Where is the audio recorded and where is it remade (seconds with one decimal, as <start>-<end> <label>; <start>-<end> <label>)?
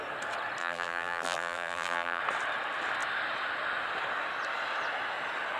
0.0-0.6 recorded; 0.6-2.2 remade; 2.2-5.6 recorded